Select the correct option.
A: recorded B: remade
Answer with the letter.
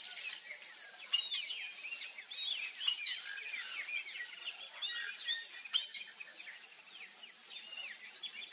A